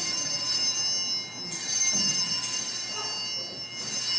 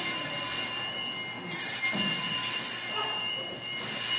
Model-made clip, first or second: second